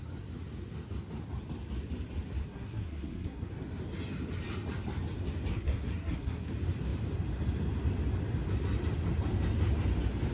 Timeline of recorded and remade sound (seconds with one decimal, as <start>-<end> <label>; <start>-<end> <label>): 0.0-2.4 recorded; 2.4-3.5 remade; 3.5-5.5 recorded; 5.5-6.5 remade; 6.5-10.3 recorded